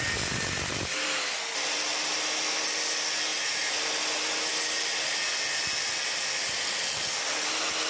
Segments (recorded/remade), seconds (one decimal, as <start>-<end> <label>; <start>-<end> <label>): 0.0-7.9 recorded